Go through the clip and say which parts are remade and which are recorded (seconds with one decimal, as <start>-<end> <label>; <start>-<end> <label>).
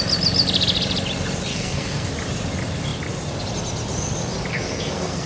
0.0-1.5 recorded; 1.5-2.1 remade; 2.1-4.5 recorded; 4.5-5.3 remade